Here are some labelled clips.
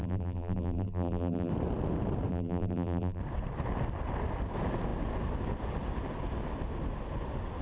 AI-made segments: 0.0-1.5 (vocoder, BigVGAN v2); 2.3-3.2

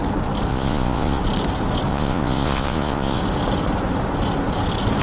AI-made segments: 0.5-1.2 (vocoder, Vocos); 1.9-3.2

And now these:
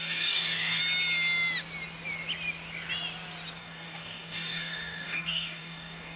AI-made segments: 0.0-0.8 (codec, DAC); 3.6-6.2

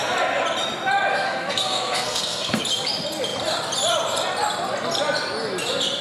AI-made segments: 1.1-2.6 (codec, SNAC)